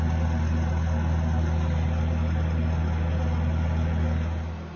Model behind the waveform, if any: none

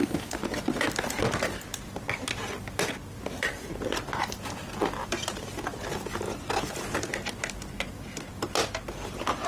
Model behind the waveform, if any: none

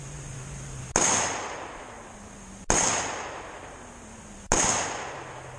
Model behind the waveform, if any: none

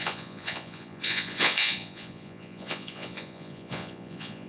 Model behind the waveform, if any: vocoder, Vocos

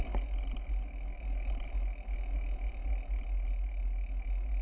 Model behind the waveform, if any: none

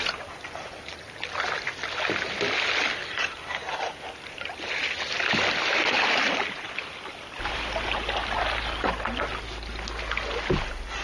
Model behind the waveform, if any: none